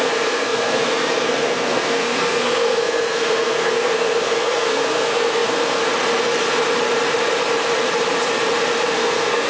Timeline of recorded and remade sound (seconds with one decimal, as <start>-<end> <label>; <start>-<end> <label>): 0.0-5.8 remade; 5.8-8.9 recorded; 8.9-9.5 remade